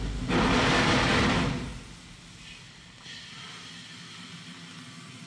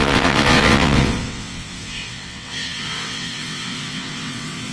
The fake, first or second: second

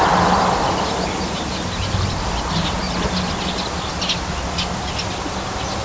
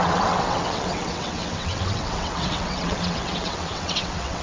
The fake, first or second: second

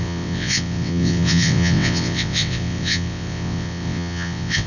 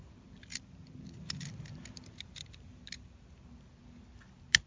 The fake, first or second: first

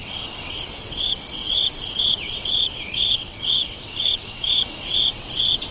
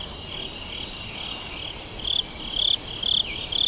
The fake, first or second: first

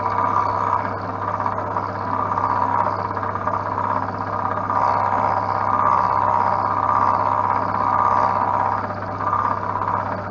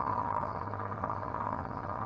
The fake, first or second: second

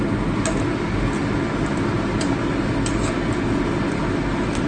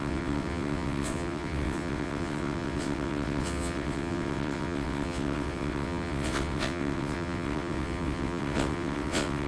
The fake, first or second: second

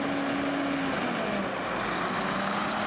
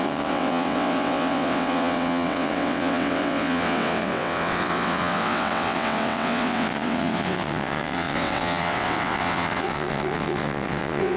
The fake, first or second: second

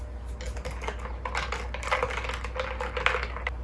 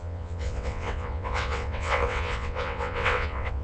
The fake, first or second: second